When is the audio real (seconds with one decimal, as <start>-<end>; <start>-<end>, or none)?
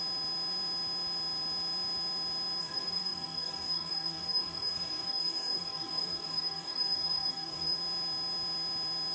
0.0-2.6; 7.8-9.1